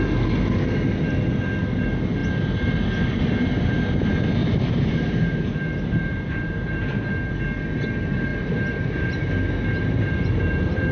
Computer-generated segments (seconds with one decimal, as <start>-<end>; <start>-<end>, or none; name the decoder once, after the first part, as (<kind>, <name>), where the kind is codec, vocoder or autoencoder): 4.4-7.1 (vocoder, BigVGAN v2); 8.3-9.1

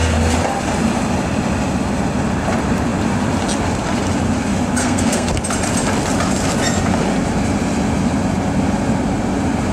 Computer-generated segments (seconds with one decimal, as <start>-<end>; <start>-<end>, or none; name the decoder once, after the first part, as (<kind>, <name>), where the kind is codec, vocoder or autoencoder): 4.8-5.3 (codec, SNAC)